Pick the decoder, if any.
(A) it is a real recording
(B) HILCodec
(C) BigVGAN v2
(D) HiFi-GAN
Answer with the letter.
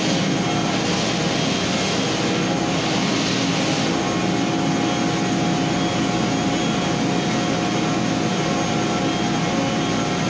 A